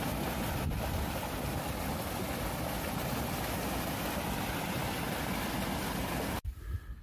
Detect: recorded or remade recorded